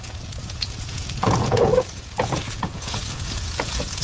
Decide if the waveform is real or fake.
fake